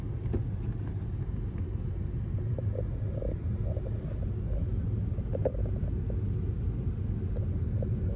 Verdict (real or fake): real